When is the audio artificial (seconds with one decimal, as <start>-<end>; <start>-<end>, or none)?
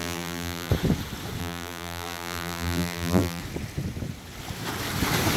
0.0-0.7; 1.4-3.4